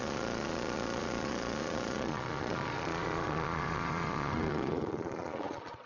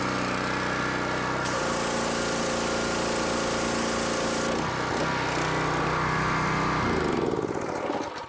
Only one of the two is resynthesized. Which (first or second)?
first